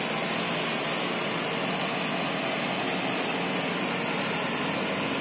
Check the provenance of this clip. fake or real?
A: real